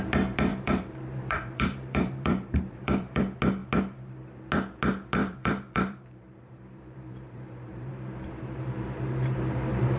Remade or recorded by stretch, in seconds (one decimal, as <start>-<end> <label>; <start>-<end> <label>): 0.0-0.5 recorded; 0.5-3.2 remade; 3.2-5.2 recorded; 5.2-7.9 remade; 7.9-10.0 recorded